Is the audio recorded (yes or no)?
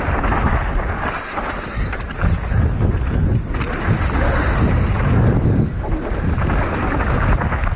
yes